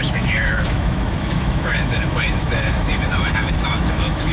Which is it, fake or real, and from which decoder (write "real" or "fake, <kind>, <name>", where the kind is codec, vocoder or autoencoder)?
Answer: fake, autoencoder, DAC-VAE